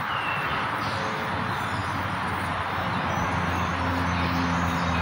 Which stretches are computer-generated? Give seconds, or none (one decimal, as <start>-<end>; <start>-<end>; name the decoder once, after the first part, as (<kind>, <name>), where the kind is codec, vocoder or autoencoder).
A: none